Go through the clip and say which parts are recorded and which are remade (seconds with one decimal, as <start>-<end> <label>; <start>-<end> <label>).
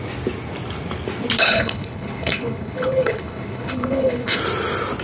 0.0-1.4 recorded; 1.4-4.4 remade; 4.4-5.0 recorded